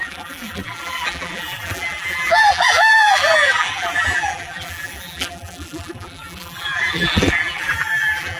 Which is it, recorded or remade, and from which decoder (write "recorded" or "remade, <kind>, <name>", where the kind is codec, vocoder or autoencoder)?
remade, vocoder, BigVGAN v2